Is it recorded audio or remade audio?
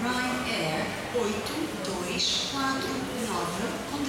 recorded